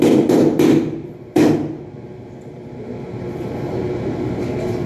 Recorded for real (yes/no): no